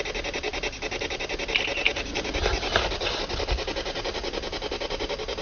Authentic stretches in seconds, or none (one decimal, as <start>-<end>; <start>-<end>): 0.0-5.4